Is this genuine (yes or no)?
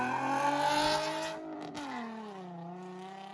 yes